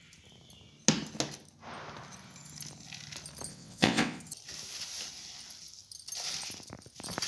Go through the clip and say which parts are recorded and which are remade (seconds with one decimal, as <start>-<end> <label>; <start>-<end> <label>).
0.0-3.5 recorded; 3.5-4.2 remade; 4.2-7.3 recorded